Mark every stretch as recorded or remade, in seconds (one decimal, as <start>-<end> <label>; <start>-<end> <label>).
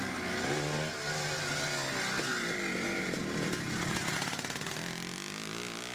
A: 0.0-5.9 recorded